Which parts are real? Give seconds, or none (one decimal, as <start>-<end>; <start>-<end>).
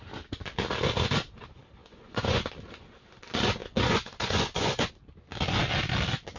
0.0-1.8; 2.5-3.6; 4.9-6.4